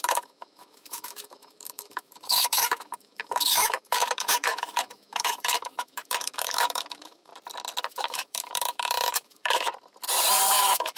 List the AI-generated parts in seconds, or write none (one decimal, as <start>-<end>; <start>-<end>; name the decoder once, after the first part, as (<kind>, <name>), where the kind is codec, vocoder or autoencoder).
0.0-7.3 (autoencoder, DAC-VAE); 7.9-9.7; 10.5-11.0